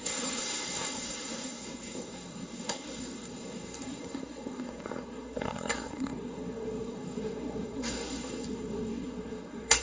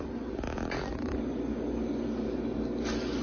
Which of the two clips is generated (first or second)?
first